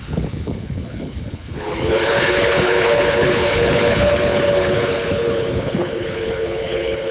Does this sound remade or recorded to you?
remade